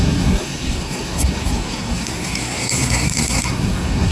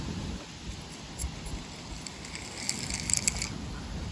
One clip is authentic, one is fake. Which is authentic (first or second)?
second